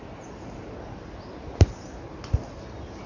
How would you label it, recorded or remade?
recorded